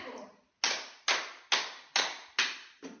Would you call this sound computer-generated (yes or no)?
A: no